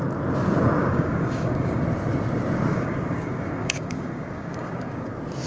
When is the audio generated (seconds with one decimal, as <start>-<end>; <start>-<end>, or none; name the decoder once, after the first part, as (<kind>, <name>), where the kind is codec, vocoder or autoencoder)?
0.8-1.8 (codec, DAC); 2.7-5.1